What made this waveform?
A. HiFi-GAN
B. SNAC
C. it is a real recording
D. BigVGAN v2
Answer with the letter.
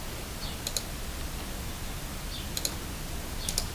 C